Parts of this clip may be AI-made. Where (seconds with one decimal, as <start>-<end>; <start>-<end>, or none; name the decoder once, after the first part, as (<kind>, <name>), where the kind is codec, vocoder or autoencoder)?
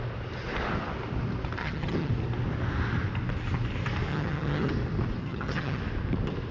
1.6-2.1 (vocoder, HiFi-GAN); 4.1-4.7; 5.2-5.8